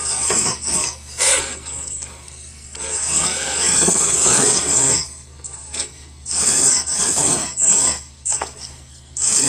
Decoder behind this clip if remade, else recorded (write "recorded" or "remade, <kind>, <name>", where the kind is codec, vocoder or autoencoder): remade, codec, SNAC